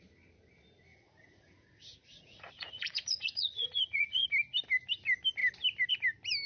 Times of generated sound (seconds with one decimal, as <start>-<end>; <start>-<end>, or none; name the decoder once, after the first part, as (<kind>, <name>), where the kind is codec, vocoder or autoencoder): 0.9-4.3 (vocoder, Vocos)